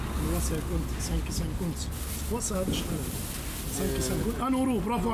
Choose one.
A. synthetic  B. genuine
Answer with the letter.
B